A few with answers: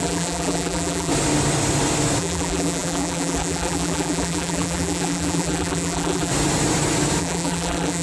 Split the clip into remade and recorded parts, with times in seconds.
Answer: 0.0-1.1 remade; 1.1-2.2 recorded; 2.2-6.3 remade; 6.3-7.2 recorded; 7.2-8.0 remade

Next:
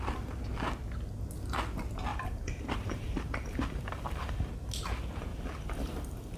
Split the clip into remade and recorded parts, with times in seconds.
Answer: 0.0-2.1 recorded; 2.1-4.5 remade; 4.5-5.3 recorded; 5.3-6.4 remade